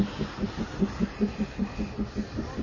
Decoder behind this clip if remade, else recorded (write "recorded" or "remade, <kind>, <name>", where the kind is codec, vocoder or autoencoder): recorded